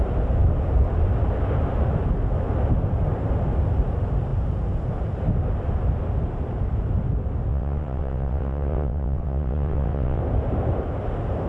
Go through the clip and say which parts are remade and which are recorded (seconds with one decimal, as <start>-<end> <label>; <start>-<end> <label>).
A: 0.0-7.5 recorded; 7.5-10.2 remade; 10.2-11.5 recorded